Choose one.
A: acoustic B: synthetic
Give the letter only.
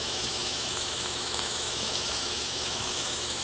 B